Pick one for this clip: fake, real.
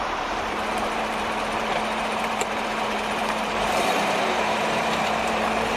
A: fake